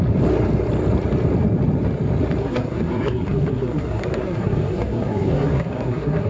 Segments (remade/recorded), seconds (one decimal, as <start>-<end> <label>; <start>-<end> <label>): 0.0-2.4 recorded; 2.4-6.3 remade